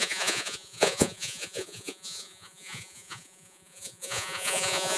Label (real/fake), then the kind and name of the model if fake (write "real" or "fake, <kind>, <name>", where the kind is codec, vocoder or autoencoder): fake, vocoder, Vocos